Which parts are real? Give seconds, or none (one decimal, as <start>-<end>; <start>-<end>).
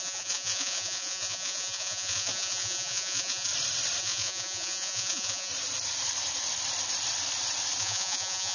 3.5-4.0; 5.5-7.8